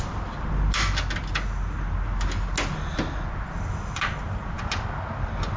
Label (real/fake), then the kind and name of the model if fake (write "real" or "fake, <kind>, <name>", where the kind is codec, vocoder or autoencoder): real